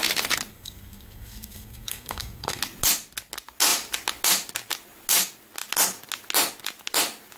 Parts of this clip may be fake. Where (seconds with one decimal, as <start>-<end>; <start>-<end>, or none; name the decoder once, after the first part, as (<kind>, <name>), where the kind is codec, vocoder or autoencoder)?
0.5-2.6 (codec, SNAC)